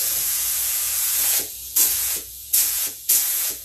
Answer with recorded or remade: remade